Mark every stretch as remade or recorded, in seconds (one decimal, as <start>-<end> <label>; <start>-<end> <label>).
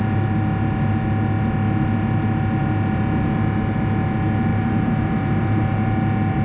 0.0-4.5 recorded; 4.5-5.8 remade; 5.8-6.4 recorded